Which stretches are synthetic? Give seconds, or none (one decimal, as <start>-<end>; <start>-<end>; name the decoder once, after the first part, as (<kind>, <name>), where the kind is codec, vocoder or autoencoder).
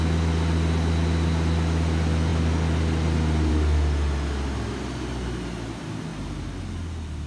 none